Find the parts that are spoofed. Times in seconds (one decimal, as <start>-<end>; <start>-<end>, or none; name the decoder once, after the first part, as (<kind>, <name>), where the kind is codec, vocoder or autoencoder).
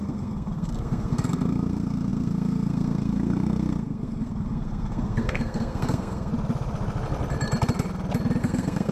0.0-6.3 (codec, SNAC); 8.4-8.9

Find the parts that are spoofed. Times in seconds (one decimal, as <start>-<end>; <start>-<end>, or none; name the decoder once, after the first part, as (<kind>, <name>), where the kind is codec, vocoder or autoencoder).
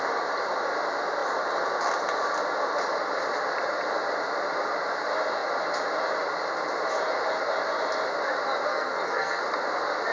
8.7-9.4 (codec, SNAC)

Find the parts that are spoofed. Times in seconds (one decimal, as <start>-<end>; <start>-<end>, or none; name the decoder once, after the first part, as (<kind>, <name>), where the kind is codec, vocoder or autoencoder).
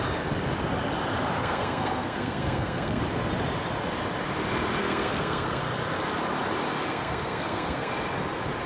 1.4-3.0 (codec, SNAC); 4.8-5.6; 6.9-7.9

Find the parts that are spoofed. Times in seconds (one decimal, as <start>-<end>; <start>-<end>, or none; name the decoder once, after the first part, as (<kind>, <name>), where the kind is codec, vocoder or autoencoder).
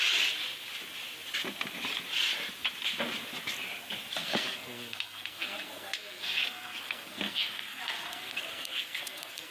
4.2-9.5 (codec, SNAC)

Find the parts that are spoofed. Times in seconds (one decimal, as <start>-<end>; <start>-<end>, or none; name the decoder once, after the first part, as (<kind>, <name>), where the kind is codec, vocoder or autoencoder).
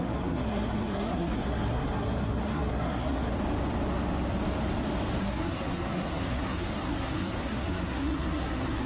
0.0-3.3 (codec, SNAC); 5.2-8.9